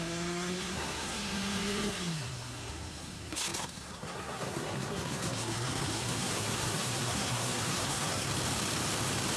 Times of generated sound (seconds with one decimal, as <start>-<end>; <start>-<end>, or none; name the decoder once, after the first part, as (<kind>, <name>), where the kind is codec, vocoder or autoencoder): 0.0-8.3 (codec, SNAC)